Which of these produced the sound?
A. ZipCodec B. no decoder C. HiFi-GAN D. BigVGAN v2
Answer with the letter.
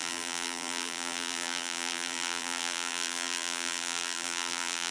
D